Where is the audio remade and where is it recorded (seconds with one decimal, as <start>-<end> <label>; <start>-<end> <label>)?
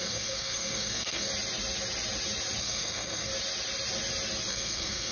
0.0-1.3 remade; 1.3-2.6 recorded; 2.6-3.3 remade; 3.3-4.5 recorded; 4.5-5.1 remade